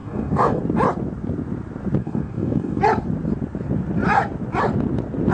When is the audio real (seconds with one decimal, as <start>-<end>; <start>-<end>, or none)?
0.6-2.0; 2.8-5.3